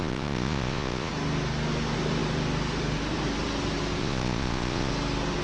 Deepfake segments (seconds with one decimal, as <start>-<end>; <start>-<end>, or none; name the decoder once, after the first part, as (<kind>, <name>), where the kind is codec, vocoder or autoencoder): 0.0-1.1 (vocoder, Vocos); 4.0-4.9